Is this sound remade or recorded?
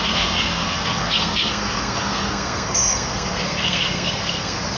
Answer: remade